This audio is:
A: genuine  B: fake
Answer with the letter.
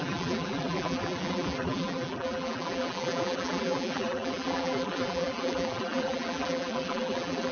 B